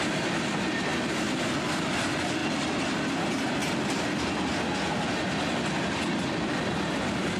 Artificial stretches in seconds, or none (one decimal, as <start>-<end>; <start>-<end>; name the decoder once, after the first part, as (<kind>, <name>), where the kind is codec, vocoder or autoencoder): none